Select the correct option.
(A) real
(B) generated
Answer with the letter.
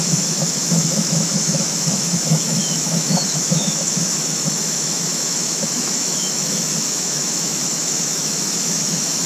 B